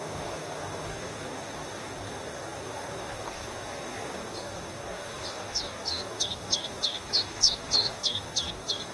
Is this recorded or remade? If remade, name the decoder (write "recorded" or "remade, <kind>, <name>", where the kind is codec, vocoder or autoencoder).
remade, codec, DAC